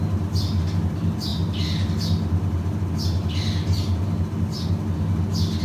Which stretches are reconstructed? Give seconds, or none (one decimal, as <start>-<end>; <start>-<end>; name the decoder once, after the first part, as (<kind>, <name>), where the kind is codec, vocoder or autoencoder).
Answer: none